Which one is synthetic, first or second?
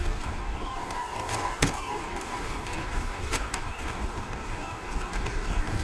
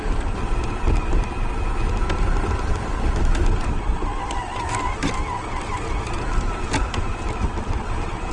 first